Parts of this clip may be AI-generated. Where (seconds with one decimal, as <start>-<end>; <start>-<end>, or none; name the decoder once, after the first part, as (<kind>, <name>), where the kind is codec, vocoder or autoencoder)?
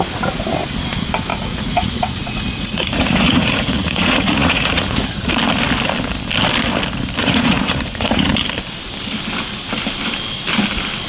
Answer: 1.3-5.3 (vocoder, Vocos); 7.2-8.3